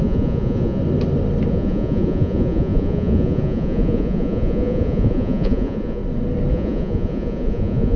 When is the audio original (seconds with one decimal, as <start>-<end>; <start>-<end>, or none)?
0.8-1.5; 6.0-6.5